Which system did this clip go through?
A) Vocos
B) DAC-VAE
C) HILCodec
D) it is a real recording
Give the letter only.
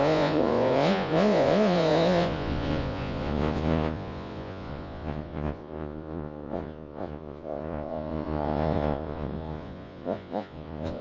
A